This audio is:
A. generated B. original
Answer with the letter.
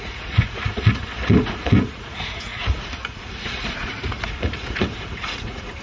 A